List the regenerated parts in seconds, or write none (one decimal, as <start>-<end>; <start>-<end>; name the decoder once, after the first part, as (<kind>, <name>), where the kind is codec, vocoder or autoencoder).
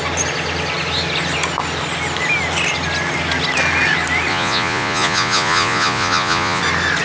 4.3-6.6 (vocoder, Vocos)